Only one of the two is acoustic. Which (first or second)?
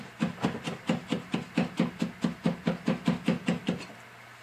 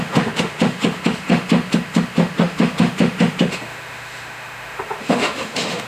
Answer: first